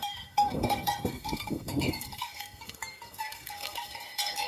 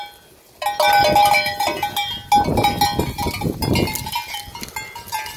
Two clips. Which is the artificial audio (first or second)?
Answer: first